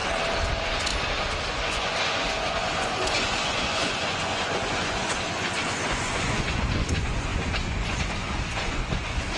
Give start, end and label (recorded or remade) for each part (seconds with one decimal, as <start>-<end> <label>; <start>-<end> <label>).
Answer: 0.0-0.5 recorded; 0.5-0.9 remade; 0.9-1.5 recorded; 1.5-9.4 remade